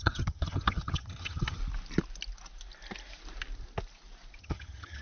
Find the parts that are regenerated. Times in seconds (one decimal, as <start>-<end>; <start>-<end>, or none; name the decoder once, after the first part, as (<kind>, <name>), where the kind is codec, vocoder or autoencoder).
0.0-1.6 (vocoder, HiFi-GAN); 4.4-5.0